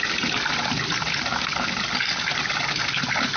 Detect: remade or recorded recorded